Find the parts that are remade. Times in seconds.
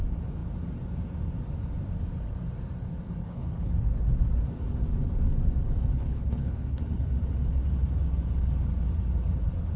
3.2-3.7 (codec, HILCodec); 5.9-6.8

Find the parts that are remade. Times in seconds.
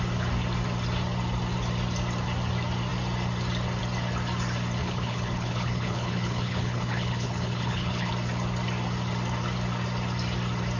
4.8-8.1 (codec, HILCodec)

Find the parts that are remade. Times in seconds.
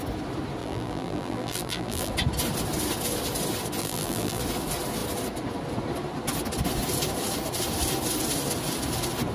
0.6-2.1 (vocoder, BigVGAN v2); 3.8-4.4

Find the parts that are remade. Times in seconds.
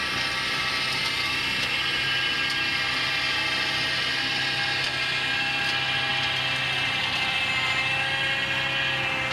none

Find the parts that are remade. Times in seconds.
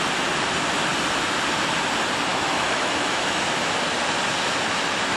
2.3-3.8 (autoencoder, DAC-VAE)